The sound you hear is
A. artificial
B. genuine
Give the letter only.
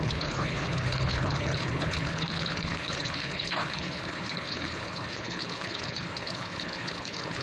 A